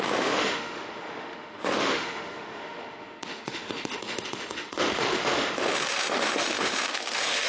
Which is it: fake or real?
fake